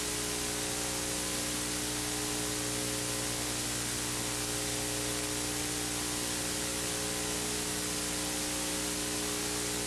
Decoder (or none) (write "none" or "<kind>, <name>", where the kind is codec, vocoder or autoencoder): none